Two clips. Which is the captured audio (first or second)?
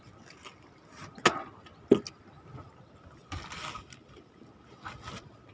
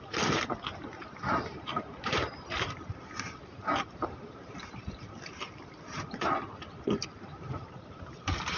first